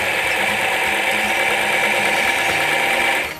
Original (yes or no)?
yes